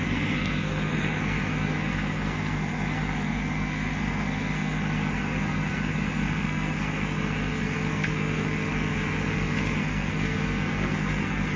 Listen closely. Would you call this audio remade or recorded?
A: remade